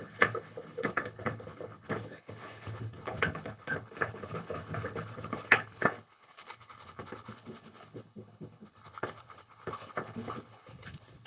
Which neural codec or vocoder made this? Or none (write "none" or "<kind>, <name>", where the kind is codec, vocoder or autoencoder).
codec, HILCodec